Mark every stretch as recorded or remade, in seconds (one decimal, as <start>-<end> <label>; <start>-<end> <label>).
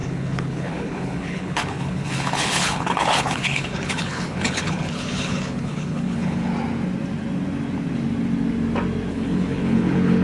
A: 0.0-6.5 remade; 6.5-9.1 recorded; 9.1-10.2 remade